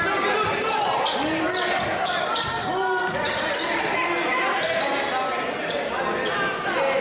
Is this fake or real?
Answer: real